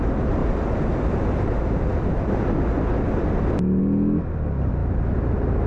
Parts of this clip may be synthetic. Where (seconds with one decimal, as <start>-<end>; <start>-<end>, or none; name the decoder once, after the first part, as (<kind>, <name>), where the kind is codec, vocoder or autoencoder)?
none